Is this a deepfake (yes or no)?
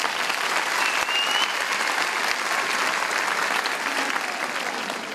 no